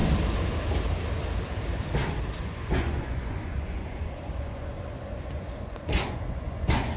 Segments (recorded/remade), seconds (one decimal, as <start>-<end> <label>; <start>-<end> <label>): 0.0-2.4 recorded; 2.4-7.0 remade